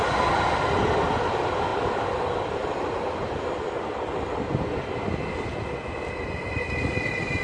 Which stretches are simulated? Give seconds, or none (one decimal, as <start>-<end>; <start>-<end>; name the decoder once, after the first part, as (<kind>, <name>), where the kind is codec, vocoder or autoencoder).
none